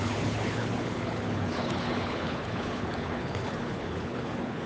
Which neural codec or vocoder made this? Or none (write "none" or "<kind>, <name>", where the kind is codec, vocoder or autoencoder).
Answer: codec, HILCodec